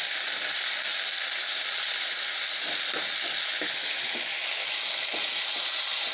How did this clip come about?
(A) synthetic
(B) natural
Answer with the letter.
B